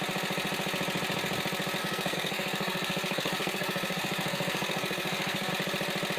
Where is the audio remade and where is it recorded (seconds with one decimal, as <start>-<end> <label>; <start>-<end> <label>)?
0.0-1.8 recorded; 1.8-5.5 remade; 5.5-6.2 recorded